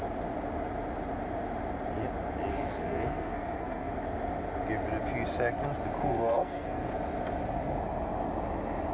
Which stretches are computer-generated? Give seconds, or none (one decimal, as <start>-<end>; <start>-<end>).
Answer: 2.5-3.9; 6.0-6.9